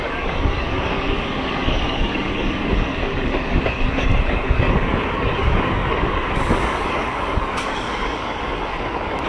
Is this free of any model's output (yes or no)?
no